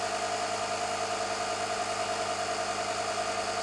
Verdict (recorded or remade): recorded